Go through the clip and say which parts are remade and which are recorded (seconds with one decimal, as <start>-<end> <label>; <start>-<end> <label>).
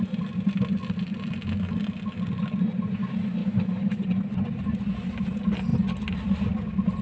0.0-3.4 recorded; 3.4-4.0 remade; 4.0-7.0 recorded